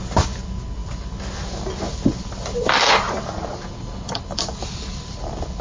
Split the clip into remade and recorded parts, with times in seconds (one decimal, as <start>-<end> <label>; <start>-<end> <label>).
0.0-5.6 remade